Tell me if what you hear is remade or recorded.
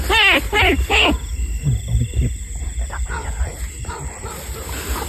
recorded